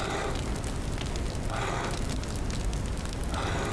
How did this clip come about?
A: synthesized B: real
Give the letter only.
B